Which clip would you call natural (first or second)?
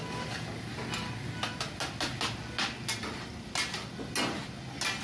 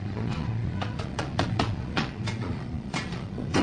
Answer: first